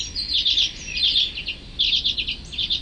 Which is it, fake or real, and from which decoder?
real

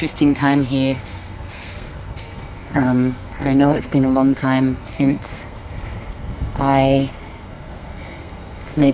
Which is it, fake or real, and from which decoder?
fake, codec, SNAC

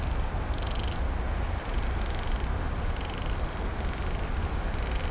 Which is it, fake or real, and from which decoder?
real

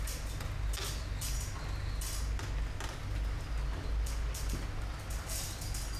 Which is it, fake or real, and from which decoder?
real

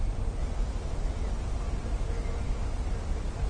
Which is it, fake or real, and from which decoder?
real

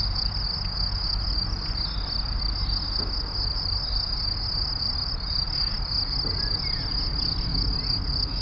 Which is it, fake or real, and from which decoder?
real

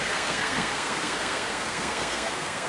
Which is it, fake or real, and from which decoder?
fake, codec, SNAC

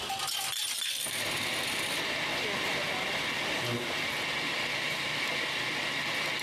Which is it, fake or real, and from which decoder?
real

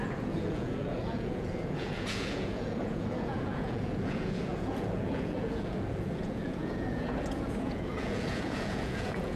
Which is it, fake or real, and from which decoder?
fake, vocoder, Vocos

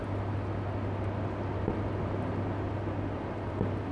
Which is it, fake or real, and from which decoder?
real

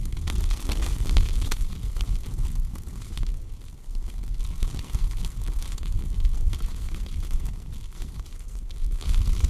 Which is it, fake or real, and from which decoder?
fake, codec, SNAC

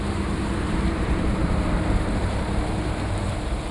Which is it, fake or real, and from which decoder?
fake, vocoder, BigVGAN v2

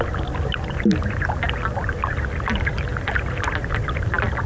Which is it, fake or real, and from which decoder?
real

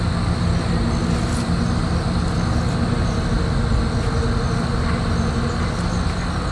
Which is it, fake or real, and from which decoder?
real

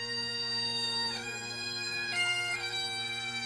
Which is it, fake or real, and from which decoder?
fake, vocoder, BigVGAN v2